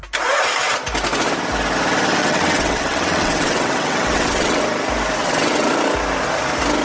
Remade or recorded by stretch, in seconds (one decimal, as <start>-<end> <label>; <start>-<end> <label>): 0.0-2.2 recorded; 2.2-4.6 remade; 4.6-5.2 recorded; 5.2-5.7 remade; 5.7-6.8 recorded